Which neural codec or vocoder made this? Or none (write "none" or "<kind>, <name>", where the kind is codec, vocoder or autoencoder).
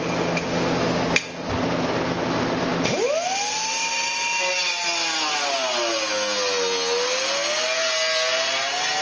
none